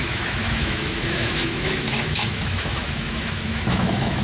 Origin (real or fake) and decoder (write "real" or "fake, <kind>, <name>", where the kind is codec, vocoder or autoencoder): fake, autoencoder, DAC-VAE